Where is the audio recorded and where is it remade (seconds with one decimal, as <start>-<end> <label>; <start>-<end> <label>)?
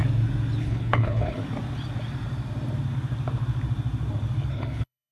0.0-0.6 recorded; 0.6-1.4 remade; 1.4-4.5 recorded; 4.5-5.1 remade